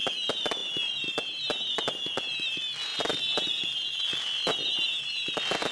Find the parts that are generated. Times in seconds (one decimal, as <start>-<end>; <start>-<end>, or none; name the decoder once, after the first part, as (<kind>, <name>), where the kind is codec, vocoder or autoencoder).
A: none